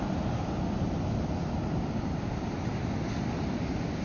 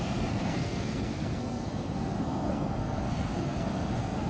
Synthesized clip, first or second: second